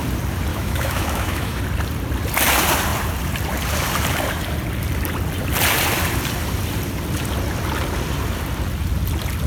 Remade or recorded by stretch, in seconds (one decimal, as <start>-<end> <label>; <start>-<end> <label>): 0.0-0.5 recorded; 0.5-1.6 remade; 1.6-9.5 recorded